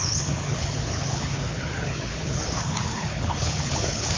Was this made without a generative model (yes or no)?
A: no